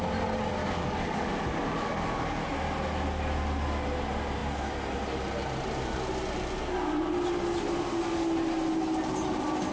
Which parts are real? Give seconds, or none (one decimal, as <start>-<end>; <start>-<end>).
0.0-0.6; 2.4-9.7